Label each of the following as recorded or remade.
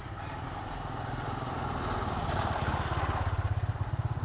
recorded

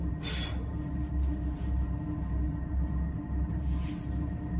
recorded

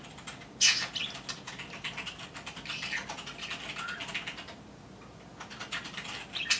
recorded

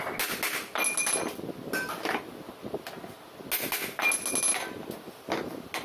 recorded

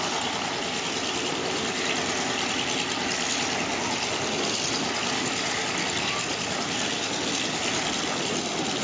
recorded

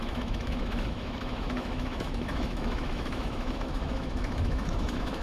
remade